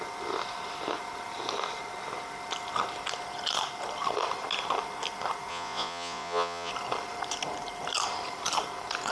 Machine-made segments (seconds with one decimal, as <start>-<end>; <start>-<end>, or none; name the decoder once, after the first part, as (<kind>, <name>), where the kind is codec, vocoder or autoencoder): 5.5-6.7 (vocoder, Vocos)

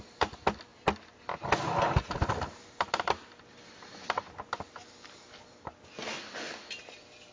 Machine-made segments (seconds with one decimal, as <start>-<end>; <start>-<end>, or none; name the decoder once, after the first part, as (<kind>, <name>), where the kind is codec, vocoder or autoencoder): none

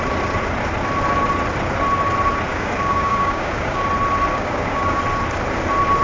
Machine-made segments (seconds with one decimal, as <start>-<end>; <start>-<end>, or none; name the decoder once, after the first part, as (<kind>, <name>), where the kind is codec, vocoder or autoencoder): 2.5-3.8 (codec, DAC); 4.3-5.0

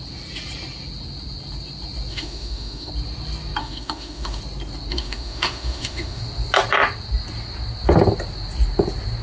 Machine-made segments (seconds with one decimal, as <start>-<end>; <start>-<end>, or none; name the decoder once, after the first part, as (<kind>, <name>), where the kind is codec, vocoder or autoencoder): 2.1-2.9 (autoencoder, DAC-VAE); 3.6-4.4; 4.9-6.2

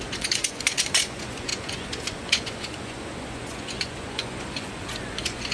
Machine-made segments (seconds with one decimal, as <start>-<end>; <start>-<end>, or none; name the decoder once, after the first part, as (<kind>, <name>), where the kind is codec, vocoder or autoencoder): 0.0-5.5 (vocoder, Vocos)

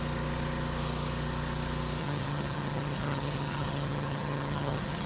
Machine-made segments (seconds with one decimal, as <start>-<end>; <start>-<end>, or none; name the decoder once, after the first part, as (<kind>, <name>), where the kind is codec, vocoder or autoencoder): 2.0-5.1 (vocoder, HiFi-GAN)

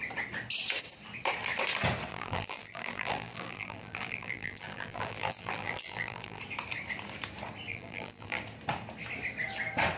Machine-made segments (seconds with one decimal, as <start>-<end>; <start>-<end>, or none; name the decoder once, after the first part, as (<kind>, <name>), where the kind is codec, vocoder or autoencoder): 2.1-6.4 (vocoder, BigVGAN v2); 7.7-8.4

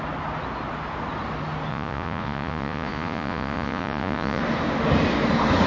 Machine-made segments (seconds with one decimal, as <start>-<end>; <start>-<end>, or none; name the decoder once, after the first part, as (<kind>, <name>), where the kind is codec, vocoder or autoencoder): 1.7-4.4 (vocoder, Vocos)